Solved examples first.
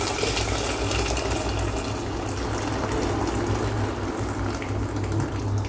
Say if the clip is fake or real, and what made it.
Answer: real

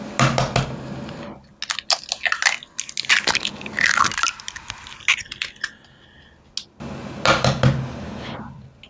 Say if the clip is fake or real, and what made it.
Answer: real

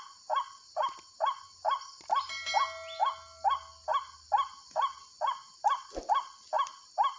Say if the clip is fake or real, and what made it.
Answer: real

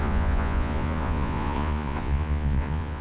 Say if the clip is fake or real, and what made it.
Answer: fake, vocoder, Vocos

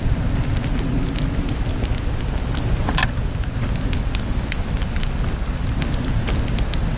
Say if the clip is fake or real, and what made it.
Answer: real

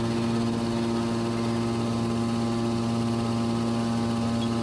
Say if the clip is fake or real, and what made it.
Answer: real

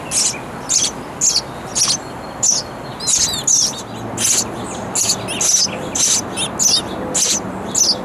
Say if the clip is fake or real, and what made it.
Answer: real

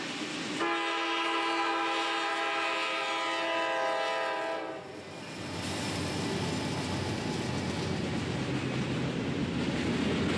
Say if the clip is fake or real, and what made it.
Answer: real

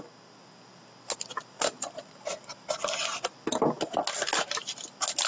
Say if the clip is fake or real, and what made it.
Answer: real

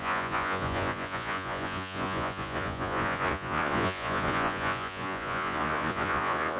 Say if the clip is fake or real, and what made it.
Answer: fake, vocoder, Vocos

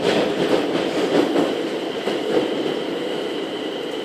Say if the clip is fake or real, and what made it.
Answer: real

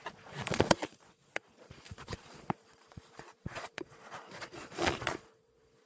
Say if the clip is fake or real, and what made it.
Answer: fake, vocoder, Vocos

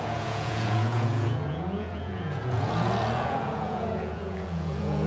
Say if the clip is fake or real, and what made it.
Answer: fake, vocoder, Vocos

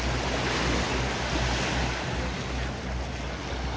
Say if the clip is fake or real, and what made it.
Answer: real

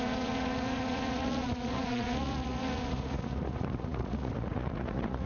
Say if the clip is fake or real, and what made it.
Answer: fake, vocoder, Vocos